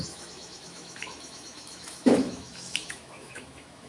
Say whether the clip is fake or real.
fake